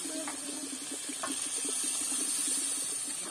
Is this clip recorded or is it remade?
recorded